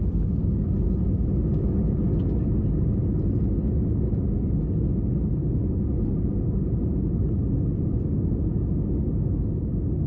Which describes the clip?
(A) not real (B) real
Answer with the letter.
B